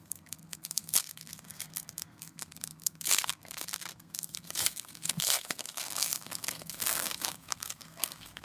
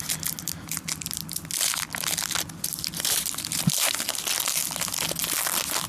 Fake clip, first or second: first